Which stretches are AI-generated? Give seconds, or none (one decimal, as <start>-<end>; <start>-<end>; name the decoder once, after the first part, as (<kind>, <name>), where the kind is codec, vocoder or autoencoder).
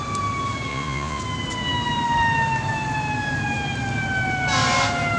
0.7-1.2 (vocoder, Vocos)